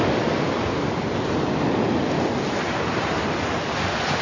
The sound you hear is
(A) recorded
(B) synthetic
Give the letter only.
A